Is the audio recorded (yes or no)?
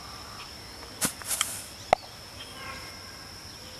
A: yes